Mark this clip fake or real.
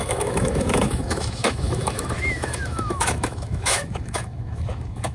fake